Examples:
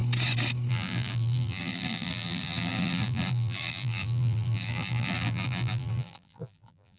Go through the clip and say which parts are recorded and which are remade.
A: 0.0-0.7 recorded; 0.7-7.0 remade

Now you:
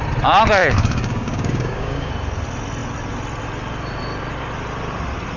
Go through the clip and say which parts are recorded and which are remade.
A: 0.0-0.6 recorded; 0.6-2.1 remade; 2.1-5.4 recorded